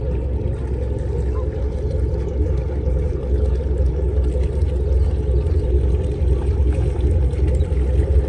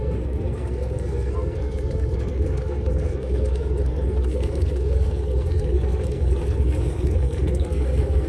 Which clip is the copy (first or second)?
second